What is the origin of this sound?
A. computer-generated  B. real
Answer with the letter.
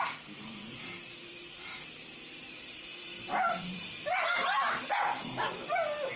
A